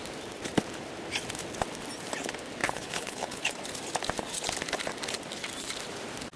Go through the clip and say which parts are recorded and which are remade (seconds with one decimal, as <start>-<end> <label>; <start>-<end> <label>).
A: 0.0-2.6 recorded; 2.6-3.5 remade; 3.5-6.4 recorded